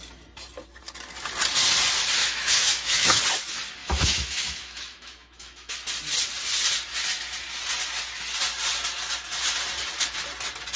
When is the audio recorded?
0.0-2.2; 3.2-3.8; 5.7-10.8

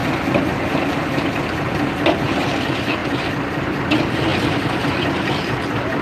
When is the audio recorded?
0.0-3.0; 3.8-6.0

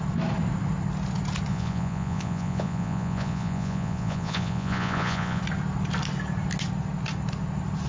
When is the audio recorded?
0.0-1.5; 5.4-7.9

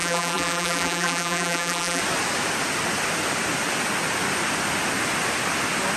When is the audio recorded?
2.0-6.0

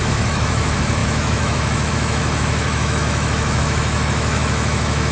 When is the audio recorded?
none